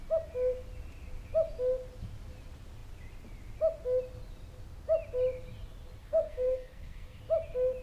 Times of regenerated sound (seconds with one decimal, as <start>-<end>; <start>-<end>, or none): 6.0-7.2